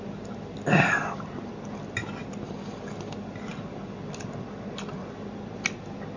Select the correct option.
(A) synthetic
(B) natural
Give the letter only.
B